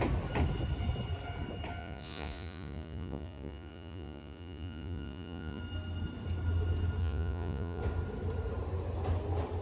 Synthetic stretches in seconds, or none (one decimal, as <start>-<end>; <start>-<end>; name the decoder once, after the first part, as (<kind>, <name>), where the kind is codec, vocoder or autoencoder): 1.8-5.6 (vocoder, Vocos); 7.0-7.8